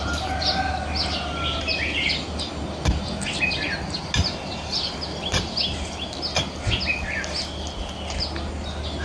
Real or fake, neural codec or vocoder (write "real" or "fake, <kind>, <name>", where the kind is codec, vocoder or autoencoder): real